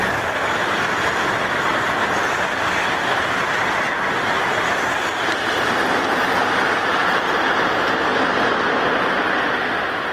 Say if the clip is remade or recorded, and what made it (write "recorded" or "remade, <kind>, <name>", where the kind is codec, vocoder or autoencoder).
recorded